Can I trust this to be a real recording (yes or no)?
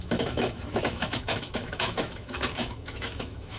no